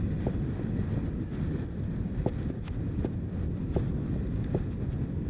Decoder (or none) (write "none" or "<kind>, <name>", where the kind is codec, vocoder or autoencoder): none